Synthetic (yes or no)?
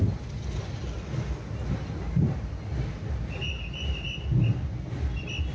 no